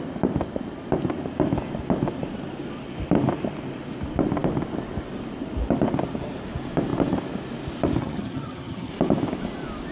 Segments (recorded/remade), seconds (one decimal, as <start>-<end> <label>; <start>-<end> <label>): 0.0-8.0 recorded; 8.0-8.9 remade; 8.9-9.9 recorded